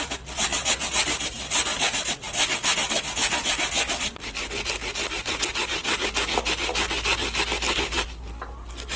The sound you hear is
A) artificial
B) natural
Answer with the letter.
B